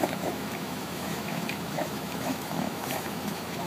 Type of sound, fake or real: fake